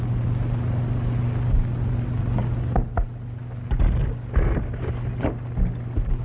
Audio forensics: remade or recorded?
recorded